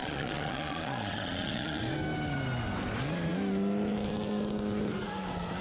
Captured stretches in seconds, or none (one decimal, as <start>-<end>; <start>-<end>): 1.8-5.6